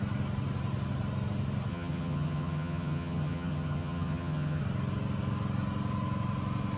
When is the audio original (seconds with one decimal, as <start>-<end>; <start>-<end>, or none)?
0.0-1.7; 4.6-6.8